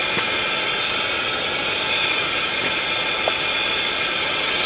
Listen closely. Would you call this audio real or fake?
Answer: real